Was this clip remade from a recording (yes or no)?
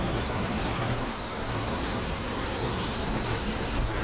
yes